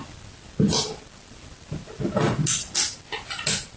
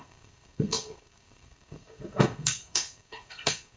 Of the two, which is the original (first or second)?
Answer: first